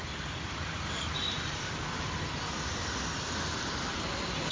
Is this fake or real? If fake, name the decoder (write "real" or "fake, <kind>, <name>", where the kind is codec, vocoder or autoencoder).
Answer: fake, vocoder, BigVGAN v2